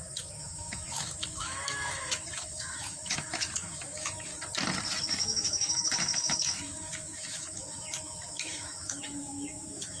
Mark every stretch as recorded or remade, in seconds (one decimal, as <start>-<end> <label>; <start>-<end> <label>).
0.0-4.3 remade; 4.3-5.0 recorded; 5.0-10.0 remade